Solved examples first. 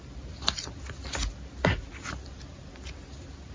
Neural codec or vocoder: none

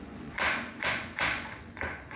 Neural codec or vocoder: vocoder, Vocos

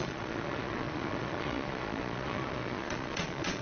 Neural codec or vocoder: vocoder, Vocos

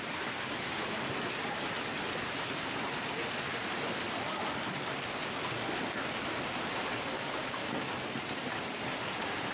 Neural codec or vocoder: none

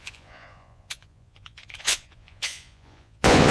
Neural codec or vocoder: vocoder, Vocos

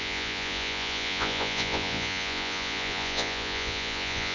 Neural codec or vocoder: vocoder, Vocos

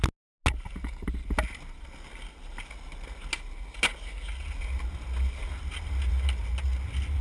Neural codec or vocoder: none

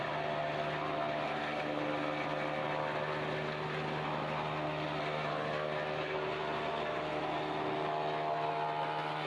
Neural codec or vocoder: none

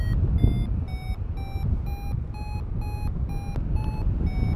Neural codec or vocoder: none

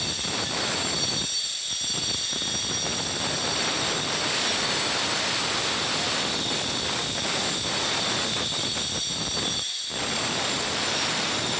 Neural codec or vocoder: none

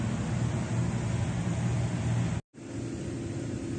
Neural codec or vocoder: none